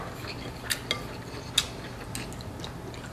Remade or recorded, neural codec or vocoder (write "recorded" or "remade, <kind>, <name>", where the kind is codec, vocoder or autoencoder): recorded